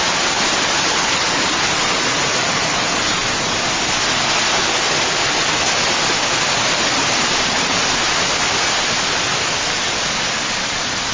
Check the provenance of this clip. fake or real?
real